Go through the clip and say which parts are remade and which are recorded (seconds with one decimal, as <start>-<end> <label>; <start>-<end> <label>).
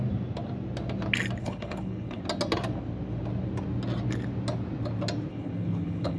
0.0-1.4 recorded; 1.4-2.2 remade; 2.2-5.3 recorded; 5.3-6.2 remade